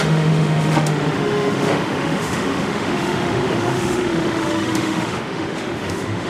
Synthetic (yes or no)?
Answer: yes